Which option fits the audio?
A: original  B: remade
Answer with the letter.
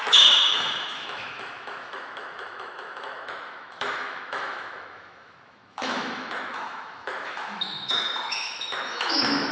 B